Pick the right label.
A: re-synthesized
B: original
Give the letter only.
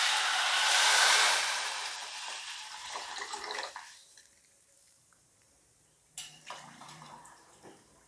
A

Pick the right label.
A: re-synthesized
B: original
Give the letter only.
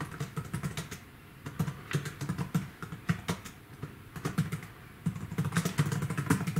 B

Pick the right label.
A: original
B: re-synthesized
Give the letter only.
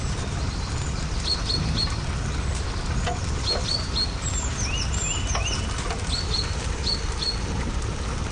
A